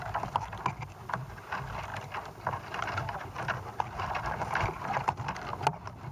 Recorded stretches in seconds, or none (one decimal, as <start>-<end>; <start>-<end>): 0.0-6.1